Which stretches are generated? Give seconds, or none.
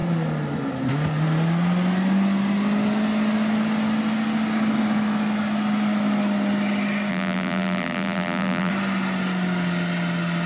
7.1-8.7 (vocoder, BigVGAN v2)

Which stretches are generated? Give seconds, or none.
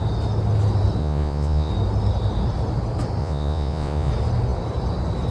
1.0-1.7 (vocoder, Vocos); 3.2-4.1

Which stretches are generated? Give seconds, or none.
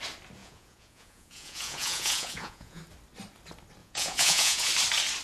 0.4-2.8 (vocoder, Vocos); 3.8-4.7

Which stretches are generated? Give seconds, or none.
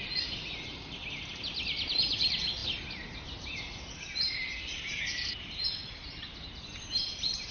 none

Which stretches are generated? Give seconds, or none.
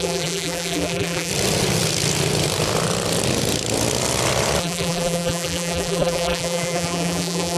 0.0-1.3 (vocoder, BigVGAN v2); 4.6-7.6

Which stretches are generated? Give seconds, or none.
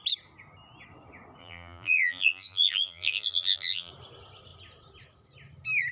1.4-3.9 (vocoder, BigVGAN v2)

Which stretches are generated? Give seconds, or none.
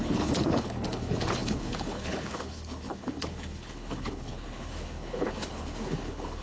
0.0-6.4 (codec, HILCodec)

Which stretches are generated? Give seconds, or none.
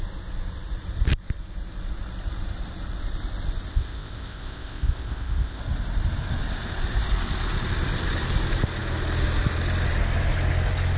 3.7-5.6 (codec, ZipCodec)